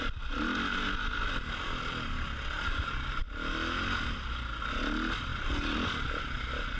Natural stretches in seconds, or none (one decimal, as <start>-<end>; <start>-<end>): 0.0-6.8